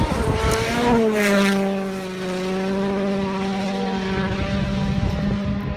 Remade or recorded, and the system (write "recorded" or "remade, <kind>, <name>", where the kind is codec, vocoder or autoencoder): recorded